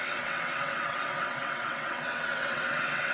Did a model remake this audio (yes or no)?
yes